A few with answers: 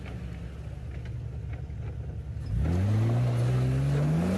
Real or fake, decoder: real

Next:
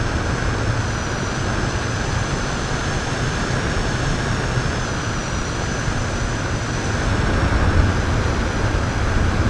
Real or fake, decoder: real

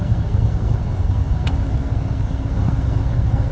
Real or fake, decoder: fake, codec, SNAC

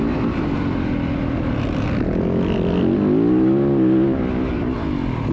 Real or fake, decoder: real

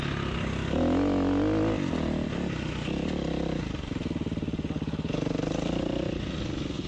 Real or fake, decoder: real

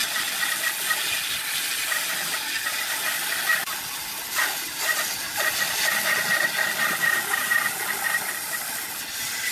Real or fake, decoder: real